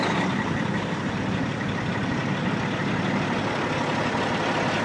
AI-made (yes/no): no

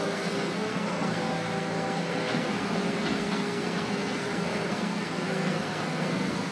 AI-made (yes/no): yes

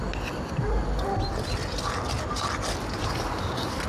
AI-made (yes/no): no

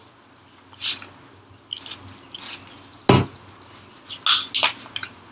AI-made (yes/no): no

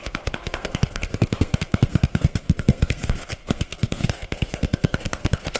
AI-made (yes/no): yes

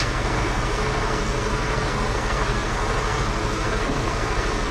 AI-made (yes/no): yes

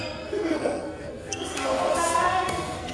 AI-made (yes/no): yes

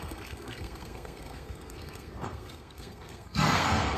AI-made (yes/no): yes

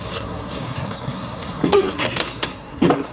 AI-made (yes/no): yes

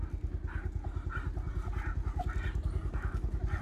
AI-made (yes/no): no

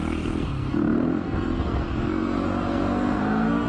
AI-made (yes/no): yes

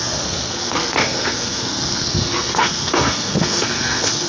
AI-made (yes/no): yes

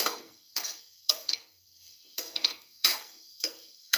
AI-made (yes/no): yes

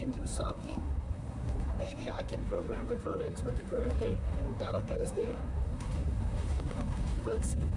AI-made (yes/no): yes